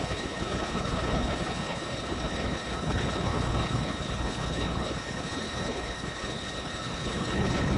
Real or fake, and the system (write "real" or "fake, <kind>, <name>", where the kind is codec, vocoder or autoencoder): fake, codec, HILCodec